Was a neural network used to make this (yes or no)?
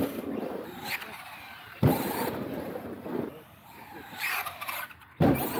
yes